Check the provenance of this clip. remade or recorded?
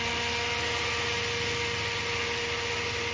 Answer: recorded